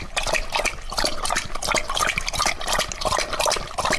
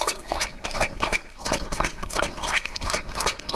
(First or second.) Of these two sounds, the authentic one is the first